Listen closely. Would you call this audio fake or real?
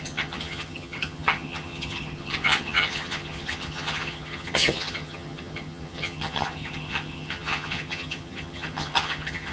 fake